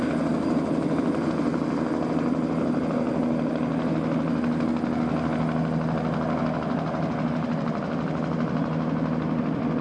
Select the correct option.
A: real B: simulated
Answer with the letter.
A